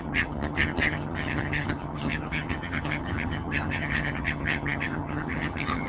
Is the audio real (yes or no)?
no